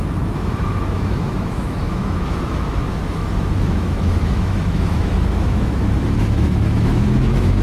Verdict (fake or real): fake